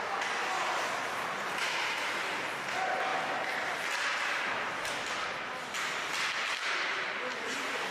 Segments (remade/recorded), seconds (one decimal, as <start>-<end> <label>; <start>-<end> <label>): 0.0-7.9 recorded